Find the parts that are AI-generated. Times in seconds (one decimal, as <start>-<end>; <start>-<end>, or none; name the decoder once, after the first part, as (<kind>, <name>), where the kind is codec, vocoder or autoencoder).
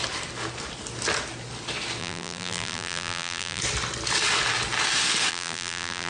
2.0-3.6 (vocoder, BigVGAN v2); 5.3-6.1